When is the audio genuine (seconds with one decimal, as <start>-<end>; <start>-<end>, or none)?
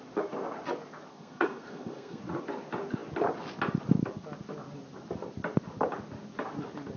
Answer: 0.0-1.1; 2.2-7.0